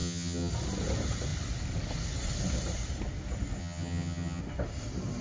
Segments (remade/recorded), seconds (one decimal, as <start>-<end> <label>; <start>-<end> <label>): 0.0-0.5 remade; 0.5-3.6 recorded; 3.6-4.4 remade; 4.4-5.2 recorded